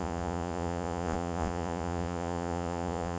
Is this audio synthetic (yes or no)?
yes